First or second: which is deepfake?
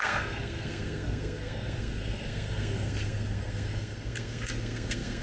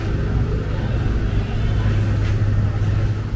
first